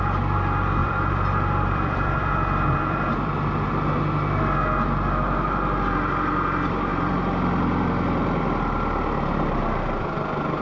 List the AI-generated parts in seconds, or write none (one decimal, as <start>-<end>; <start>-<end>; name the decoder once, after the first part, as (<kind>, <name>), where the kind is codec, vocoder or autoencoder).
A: 0.8-3.7 (vocoder, BigVGAN v2); 6.9-9.6